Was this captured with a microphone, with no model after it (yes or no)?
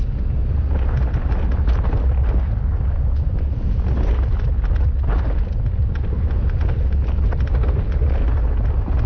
yes